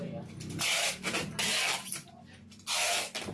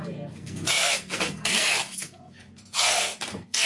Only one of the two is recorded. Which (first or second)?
first